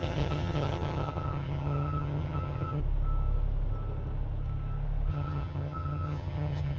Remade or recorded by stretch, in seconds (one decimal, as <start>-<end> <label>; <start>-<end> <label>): 0.0-2.8 remade; 2.8-5.1 recorded; 5.1-6.8 remade